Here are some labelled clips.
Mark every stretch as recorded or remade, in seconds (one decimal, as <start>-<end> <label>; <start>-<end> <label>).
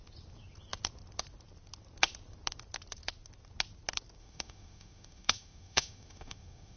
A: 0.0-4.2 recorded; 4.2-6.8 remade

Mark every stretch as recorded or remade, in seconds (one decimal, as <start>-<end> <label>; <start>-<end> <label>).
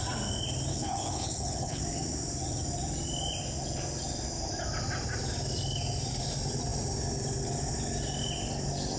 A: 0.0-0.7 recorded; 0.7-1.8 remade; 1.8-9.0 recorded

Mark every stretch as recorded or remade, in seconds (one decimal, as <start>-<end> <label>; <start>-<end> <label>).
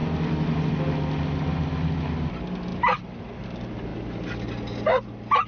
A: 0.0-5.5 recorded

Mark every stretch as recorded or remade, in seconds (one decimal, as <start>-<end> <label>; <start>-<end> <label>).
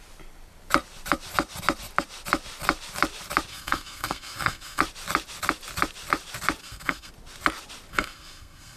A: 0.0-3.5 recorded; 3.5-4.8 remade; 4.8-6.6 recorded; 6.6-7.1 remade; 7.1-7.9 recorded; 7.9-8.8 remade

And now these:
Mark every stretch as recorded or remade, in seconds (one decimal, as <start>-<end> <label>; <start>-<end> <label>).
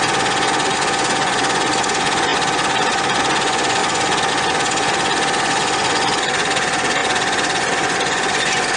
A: 0.0-8.8 remade